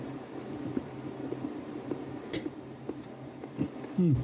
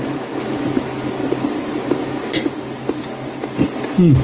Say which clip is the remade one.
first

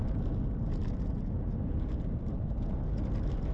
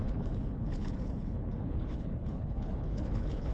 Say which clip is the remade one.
second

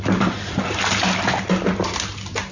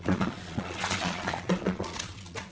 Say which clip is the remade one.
second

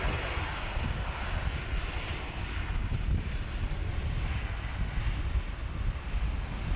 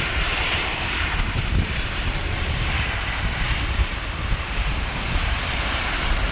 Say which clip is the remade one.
second